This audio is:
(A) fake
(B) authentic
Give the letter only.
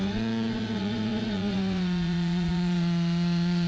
A